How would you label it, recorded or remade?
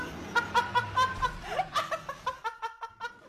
recorded